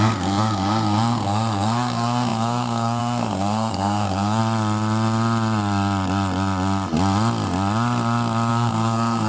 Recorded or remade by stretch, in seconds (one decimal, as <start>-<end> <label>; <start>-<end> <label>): 0.0-4.4 remade; 4.4-8.5 recorded; 8.5-9.3 remade